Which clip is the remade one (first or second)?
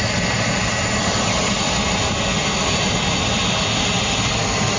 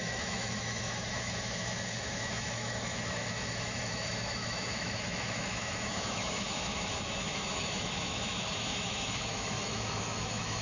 second